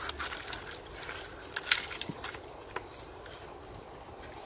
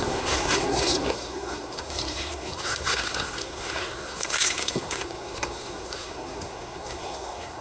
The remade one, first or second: second